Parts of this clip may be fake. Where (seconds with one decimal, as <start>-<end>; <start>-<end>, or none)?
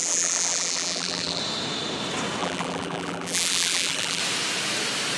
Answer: 0.0-1.4; 2.4-4.2